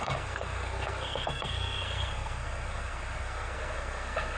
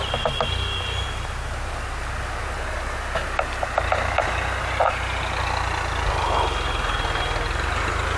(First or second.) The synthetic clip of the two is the first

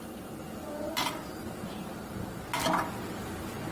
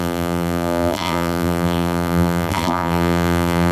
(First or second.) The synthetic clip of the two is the second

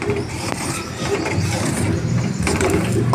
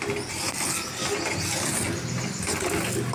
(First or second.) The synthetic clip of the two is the first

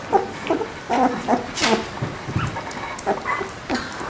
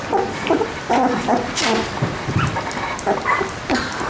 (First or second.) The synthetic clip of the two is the second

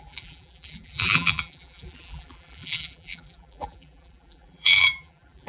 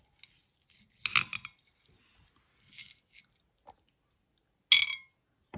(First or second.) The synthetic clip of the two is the first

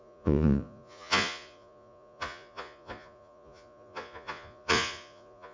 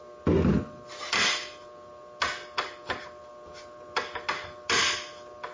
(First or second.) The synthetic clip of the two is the first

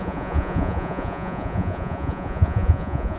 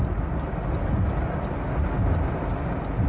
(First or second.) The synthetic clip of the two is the first